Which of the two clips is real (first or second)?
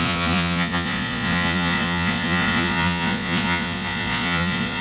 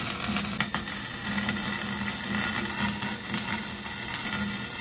second